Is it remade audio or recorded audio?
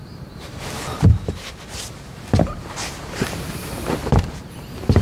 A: remade